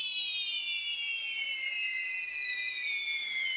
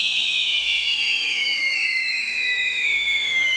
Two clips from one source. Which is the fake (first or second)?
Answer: second